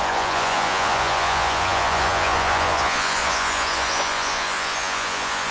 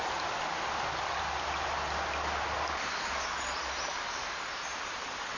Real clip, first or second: second